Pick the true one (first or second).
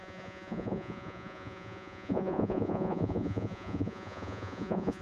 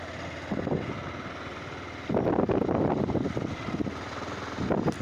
second